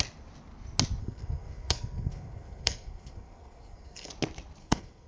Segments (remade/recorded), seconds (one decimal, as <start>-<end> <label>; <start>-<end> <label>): 0.0-1.0 recorded; 1.0-4.1 remade; 4.1-4.6 recorded; 4.6-5.1 remade